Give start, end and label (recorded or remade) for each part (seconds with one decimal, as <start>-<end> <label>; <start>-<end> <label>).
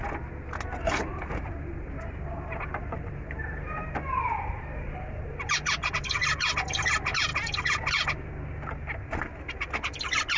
0.0-1.1 recorded; 1.1-5.9 remade; 5.9-10.4 recorded